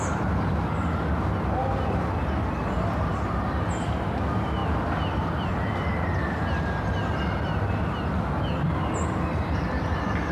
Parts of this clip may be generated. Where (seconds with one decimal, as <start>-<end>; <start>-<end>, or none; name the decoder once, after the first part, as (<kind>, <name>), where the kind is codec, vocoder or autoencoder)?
none